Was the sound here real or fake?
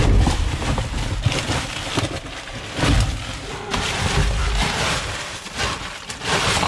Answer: real